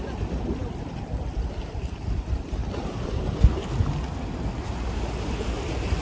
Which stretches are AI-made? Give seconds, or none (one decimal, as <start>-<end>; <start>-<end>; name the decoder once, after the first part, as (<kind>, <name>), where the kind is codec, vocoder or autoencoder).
none